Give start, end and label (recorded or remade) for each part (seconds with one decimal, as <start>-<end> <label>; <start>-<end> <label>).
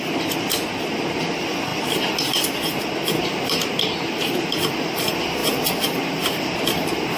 0.0-7.2 recorded